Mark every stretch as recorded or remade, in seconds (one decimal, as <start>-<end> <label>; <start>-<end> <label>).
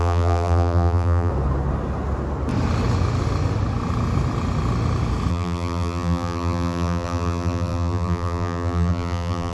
0.0-1.3 remade; 1.3-5.3 recorded; 5.3-9.5 remade